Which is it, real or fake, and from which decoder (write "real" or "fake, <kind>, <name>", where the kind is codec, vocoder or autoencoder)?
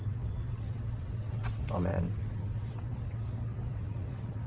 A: fake, vocoder, WaveNeXt